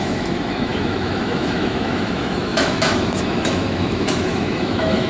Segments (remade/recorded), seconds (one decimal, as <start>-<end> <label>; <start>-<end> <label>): 0.0-5.1 remade